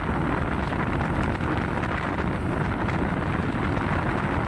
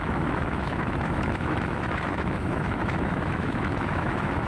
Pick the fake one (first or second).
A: second